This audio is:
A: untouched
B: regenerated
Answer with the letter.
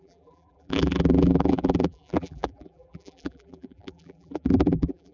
B